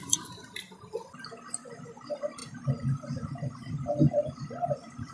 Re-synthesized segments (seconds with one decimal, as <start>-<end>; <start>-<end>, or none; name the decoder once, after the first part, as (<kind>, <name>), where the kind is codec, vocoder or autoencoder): 2.4-5.1 (vocoder, BigVGAN v2)